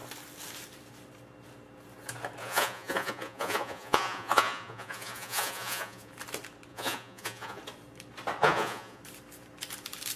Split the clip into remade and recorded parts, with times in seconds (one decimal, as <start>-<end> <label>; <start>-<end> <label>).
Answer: 0.0-2.4 recorded; 2.4-6.1 remade; 6.1-6.7 recorded; 6.7-7.6 remade; 7.6-8.4 recorded; 8.4-9.0 remade; 9.0-10.2 recorded